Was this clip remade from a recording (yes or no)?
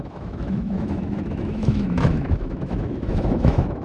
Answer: yes